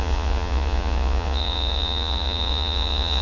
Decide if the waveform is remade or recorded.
remade